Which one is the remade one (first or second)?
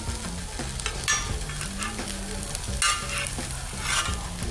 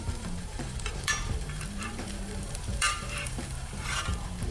second